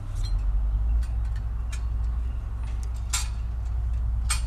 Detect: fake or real real